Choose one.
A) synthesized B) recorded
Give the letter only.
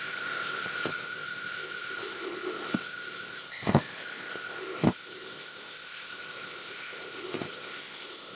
A